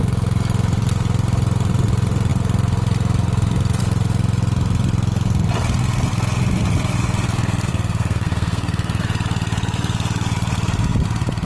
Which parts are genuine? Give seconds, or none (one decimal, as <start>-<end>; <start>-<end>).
0.0-7.7; 9.0-11.4